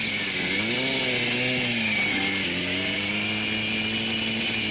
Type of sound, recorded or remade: recorded